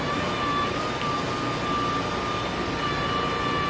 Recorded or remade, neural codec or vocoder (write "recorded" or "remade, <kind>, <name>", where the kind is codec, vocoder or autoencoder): recorded